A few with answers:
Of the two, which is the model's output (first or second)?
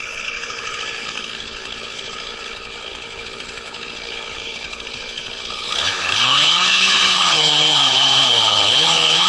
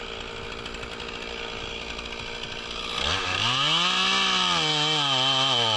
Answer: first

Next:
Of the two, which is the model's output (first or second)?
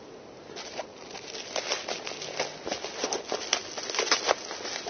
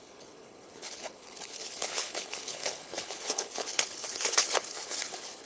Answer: second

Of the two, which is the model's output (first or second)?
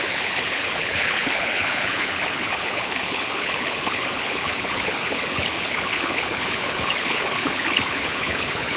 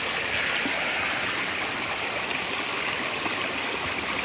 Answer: first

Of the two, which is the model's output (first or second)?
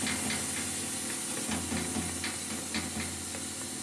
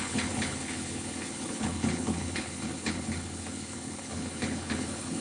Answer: second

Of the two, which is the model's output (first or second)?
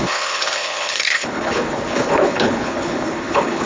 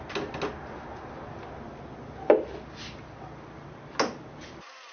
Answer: first